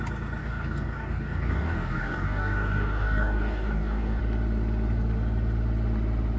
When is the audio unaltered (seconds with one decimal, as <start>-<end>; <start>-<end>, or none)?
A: 0.0-0.4; 4.2-6.4